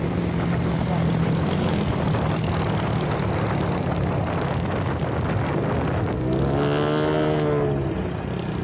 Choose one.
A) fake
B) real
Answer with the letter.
B